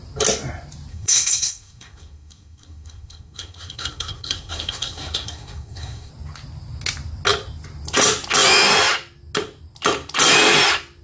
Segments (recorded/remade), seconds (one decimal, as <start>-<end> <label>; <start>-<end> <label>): 0.0-0.9 recorded; 0.9-6.1 remade; 6.1-11.0 recorded